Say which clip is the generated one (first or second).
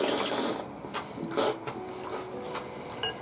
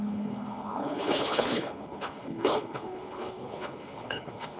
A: second